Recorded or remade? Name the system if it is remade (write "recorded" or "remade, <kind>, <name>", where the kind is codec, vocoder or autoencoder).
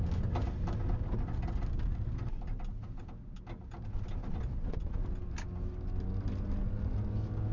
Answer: recorded